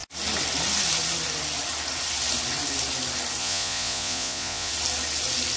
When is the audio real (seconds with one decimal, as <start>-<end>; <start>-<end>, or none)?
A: 0.0-3.4; 4.7-5.6